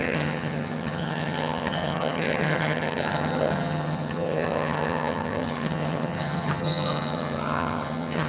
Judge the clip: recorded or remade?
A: remade